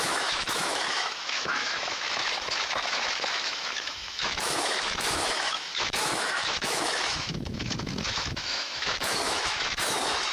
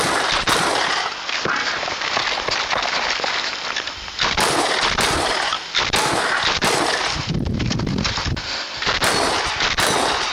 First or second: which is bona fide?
second